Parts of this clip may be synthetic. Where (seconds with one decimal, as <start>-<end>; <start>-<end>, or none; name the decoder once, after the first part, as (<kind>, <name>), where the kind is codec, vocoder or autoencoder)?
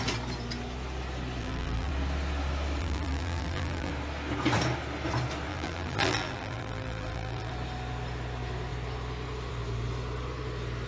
1.4-1.9 (vocoder, BigVGAN v2); 2.8-3.9; 5.5-7.5